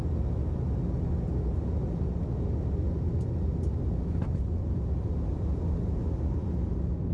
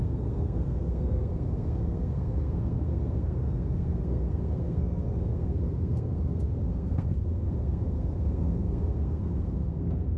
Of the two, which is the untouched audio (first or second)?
first